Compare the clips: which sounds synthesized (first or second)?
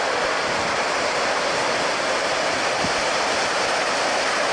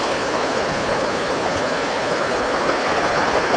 second